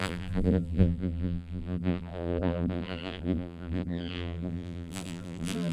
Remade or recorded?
remade